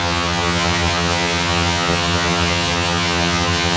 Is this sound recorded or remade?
remade